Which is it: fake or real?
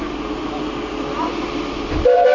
real